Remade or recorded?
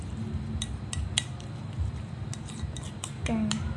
recorded